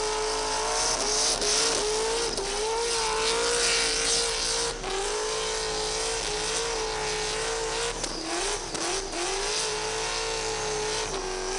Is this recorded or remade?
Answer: recorded